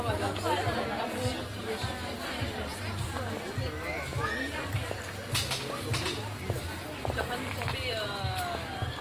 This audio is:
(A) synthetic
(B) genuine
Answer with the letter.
B